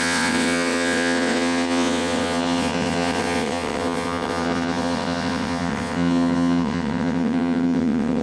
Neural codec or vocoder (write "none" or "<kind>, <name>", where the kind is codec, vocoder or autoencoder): vocoder, WaveNeXt